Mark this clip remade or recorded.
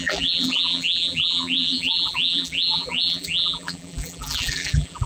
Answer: remade